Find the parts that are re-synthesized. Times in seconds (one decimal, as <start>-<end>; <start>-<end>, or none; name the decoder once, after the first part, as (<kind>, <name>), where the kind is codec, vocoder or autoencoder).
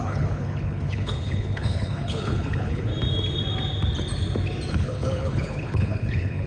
0.0-2.9 (codec, HILCodec); 4.7-6.5